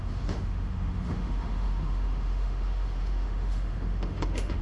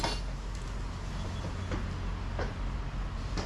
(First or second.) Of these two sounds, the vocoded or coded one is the first